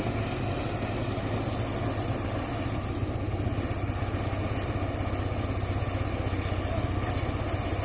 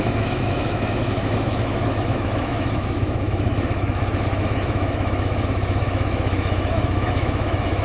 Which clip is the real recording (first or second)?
first